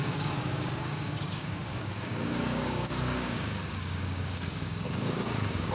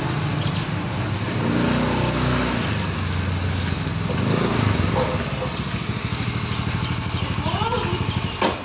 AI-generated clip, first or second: first